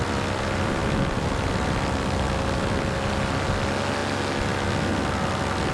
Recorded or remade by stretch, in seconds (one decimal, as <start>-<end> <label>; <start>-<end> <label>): 0.0-0.8 recorded; 0.8-2.3 remade; 2.3-5.7 recorded